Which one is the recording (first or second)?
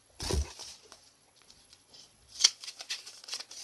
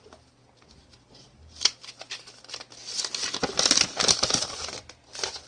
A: second